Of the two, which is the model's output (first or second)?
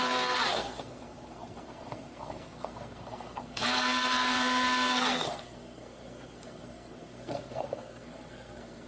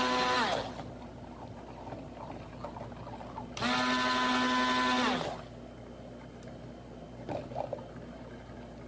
first